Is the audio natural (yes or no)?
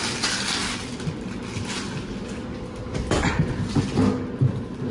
yes